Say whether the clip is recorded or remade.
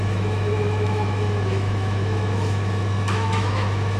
remade